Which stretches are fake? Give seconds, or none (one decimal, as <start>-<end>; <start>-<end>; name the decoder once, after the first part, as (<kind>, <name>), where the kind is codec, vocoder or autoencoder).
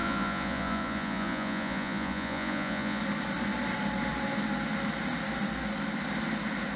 0.0-3.0 (vocoder, Vocos)